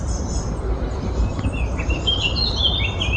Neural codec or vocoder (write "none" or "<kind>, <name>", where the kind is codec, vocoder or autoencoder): none